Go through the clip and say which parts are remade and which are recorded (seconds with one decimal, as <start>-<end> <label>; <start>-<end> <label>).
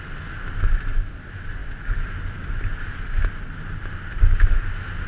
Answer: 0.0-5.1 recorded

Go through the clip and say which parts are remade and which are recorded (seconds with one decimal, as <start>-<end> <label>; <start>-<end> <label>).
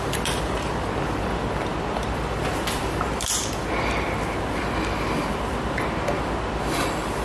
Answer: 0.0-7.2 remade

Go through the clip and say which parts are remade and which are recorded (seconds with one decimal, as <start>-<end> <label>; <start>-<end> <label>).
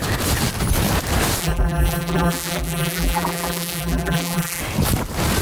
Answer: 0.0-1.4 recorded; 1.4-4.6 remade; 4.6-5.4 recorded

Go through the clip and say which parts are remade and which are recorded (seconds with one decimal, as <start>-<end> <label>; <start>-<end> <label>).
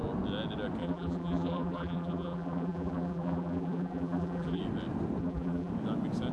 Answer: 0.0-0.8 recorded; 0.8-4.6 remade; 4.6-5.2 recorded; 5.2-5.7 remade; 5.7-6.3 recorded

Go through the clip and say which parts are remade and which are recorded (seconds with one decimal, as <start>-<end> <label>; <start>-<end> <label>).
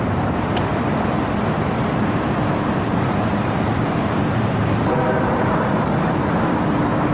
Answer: 0.0-0.7 remade; 0.7-1.2 recorded; 1.2-7.1 remade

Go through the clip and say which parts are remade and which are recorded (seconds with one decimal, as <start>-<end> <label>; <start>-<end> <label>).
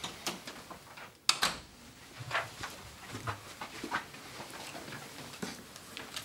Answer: 0.0-2.2 recorded; 2.2-3.9 remade; 3.9-6.2 recorded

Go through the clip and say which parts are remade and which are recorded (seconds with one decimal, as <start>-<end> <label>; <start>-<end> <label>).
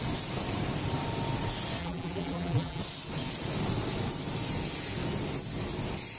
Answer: 0.0-1.8 recorded; 1.8-2.8 remade; 2.8-6.2 recorded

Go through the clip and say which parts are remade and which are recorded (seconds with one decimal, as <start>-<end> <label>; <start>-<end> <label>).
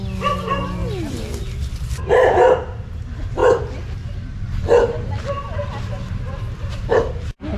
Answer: 0.0-7.6 recorded